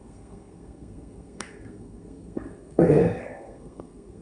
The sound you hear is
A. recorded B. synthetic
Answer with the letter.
B